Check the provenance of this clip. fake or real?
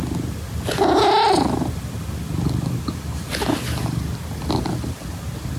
real